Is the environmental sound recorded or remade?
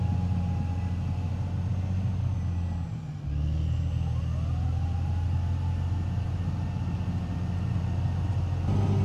recorded